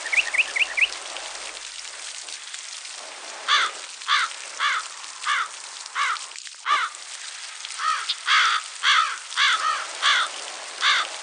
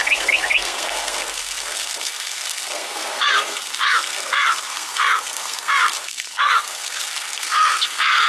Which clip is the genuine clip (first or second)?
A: first